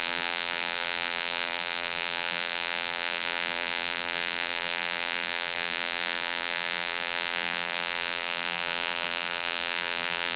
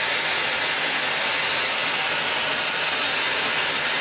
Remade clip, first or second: first